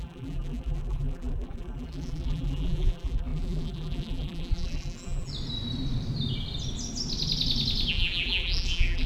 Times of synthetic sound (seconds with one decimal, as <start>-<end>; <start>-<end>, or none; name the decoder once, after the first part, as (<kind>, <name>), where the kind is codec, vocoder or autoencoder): 0.0-5.3 (vocoder, BigVGAN v2); 7.9-9.1